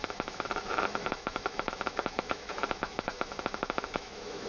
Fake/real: fake